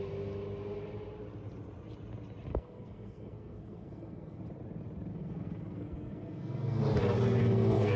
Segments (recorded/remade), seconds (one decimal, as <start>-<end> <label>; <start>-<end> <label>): 0.0-2.5 recorded; 2.5-4.4 remade; 4.4-5.1 recorded; 5.1-6.8 remade; 6.8-7.4 recorded; 7.4-8.0 remade